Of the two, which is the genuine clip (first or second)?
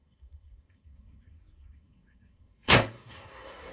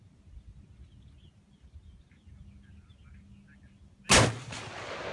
second